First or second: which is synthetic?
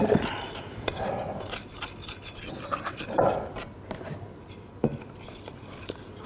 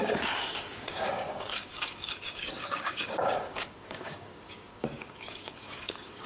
second